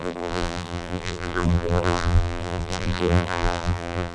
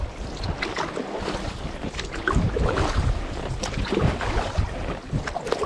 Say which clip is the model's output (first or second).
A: first